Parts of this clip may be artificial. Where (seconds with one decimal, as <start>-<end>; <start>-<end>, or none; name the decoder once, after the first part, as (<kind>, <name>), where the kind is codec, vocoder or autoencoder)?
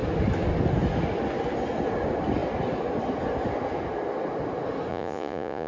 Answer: 4.9-5.7 (vocoder, Vocos)